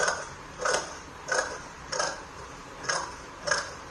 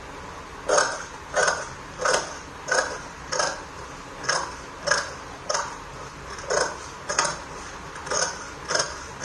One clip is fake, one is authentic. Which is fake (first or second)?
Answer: first